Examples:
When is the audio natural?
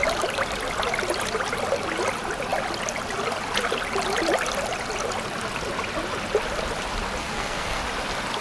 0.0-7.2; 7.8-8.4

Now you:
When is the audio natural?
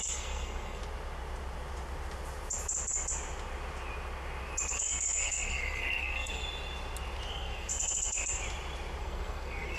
0.8-4.7; 6.4-7.3; 8.4-9.0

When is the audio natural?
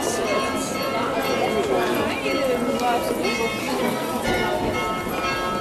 0.0-3.6; 4.2-5.6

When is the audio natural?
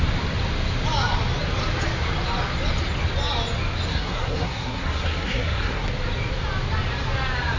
0.0-3.9; 5.9-7.6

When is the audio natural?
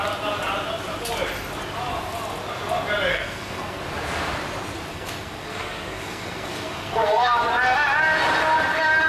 0.0-3.1; 3.8-4.9; 7.4-9.1